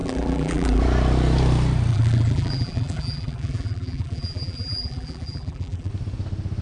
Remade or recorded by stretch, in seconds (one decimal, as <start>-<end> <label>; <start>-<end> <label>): 0.0-0.8 remade; 0.8-1.9 recorded; 1.9-5.9 remade; 5.9-6.6 recorded